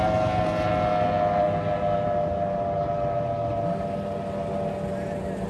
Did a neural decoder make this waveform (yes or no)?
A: no